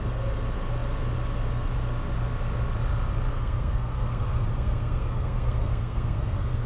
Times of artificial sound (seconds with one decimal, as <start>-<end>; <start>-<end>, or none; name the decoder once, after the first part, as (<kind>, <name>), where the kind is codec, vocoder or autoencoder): 3.3-6.7 (codec, SNAC)